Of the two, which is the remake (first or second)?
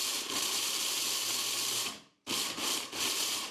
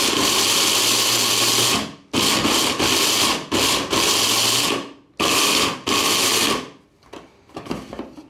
first